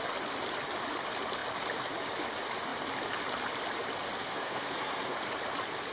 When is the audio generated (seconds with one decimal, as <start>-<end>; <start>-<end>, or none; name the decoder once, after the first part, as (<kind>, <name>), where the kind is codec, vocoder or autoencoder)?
4.2-5.2 (codec, SNAC)